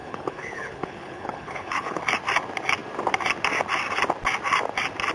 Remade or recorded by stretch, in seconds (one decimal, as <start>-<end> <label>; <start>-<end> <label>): 0.0-2.0 remade; 2.0-5.1 recorded